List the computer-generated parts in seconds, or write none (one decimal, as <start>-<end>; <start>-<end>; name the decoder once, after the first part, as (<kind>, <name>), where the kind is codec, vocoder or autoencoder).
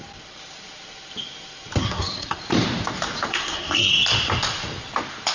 1.8-2.4 (codec, SNAC); 3.3-3.9